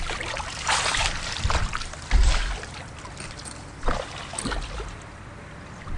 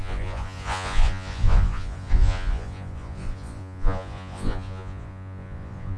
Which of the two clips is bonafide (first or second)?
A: first